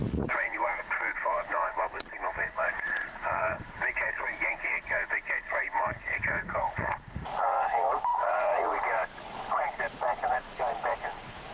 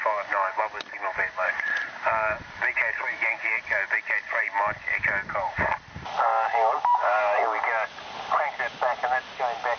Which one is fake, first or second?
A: first